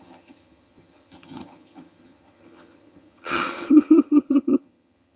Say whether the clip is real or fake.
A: fake